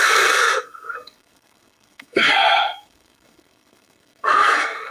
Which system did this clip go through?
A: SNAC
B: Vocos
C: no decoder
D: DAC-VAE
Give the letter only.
A